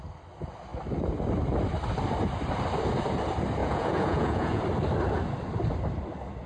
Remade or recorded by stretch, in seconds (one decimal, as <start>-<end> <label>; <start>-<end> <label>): 0.0-3.6 recorded; 3.6-4.6 remade; 4.6-6.5 recorded